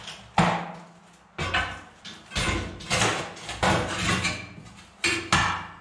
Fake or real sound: real